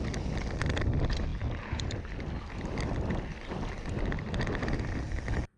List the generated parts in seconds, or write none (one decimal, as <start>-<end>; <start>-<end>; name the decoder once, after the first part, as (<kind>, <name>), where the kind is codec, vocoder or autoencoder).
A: none